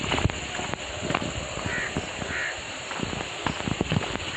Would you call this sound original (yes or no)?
yes